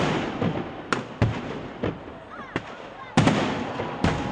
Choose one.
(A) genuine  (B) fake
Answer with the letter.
A